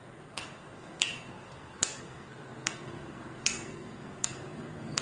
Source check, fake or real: fake